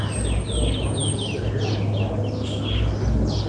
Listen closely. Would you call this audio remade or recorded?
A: recorded